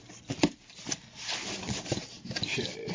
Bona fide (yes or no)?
yes